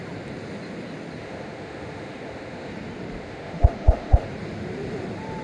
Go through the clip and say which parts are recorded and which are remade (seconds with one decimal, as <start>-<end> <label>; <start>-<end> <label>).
0.0-1.2 recorded; 1.2-2.7 remade; 2.7-3.2 recorded; 3.2-4.3 remade; 4.3-5.4 recorded